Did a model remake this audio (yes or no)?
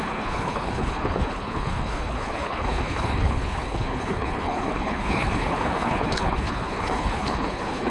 yes